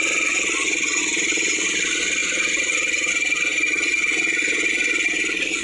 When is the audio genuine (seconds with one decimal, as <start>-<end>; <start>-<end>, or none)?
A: 0.0-5.6